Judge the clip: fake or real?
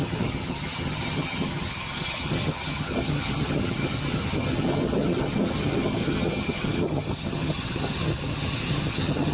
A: fake